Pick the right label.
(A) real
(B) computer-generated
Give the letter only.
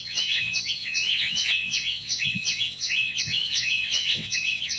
B